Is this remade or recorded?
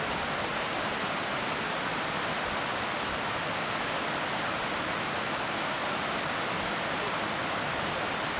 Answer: recorded